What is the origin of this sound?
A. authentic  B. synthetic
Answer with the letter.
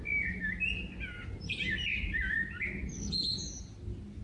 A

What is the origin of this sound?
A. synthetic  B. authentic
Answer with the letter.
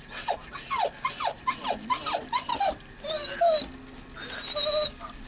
B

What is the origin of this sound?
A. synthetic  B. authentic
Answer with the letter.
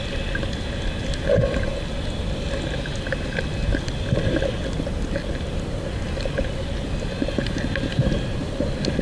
B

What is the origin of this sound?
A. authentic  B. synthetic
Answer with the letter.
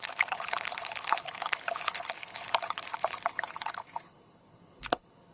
B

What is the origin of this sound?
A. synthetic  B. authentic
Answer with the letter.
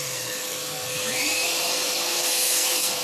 A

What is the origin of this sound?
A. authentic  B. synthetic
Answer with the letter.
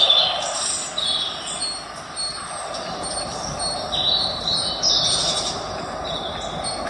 A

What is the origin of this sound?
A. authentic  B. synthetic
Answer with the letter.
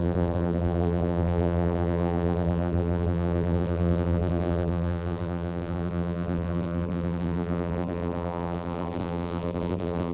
B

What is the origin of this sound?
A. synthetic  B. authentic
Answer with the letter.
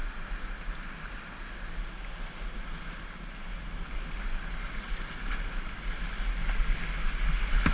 B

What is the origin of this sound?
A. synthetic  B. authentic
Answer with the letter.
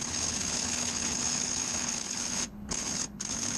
A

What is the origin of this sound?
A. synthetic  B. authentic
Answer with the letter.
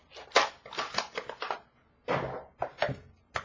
B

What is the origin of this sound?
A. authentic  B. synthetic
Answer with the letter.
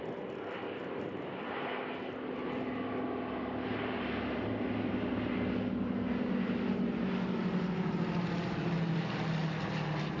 A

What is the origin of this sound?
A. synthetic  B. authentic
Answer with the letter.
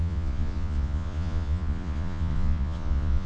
A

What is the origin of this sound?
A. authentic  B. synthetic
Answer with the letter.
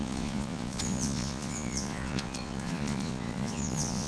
B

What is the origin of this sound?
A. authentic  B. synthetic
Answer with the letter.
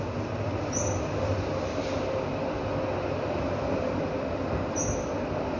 A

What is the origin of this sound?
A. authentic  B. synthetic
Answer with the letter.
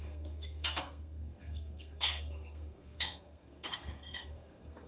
B